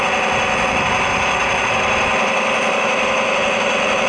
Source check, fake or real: real